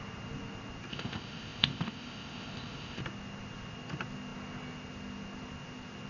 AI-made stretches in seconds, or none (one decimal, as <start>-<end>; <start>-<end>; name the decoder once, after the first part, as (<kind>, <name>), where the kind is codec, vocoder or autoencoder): 0.9-3.0 (codec, ZipCodec)